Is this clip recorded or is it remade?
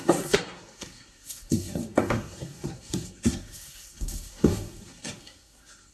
remade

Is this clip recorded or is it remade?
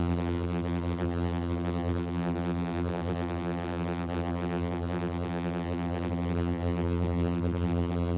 remade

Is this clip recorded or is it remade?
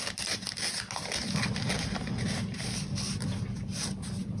recorded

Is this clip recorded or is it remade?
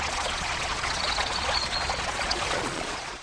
remade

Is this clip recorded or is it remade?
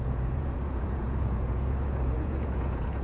remade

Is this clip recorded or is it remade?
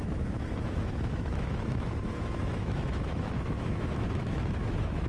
remade